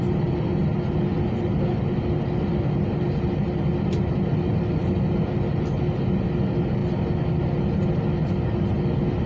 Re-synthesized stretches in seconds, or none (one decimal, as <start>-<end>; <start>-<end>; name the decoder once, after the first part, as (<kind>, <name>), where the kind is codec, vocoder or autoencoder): none